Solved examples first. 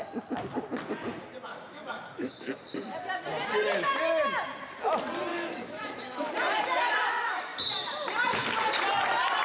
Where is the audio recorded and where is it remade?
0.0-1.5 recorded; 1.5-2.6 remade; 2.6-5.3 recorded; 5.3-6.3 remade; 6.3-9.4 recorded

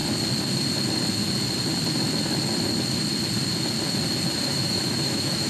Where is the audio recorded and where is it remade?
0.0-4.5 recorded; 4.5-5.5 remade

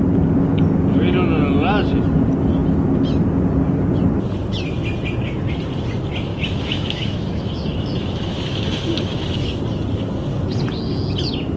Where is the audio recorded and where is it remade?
0.0-6.3 recorded; 6.3-9.6 remade; 9.6-11.6 recorded